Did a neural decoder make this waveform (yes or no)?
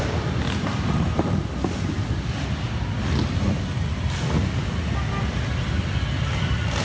no